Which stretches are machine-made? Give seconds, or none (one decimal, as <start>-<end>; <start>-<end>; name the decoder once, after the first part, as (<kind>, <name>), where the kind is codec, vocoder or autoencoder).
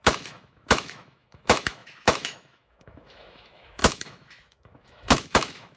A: 0.0-5.8 (autoencoder, DAC-VAE)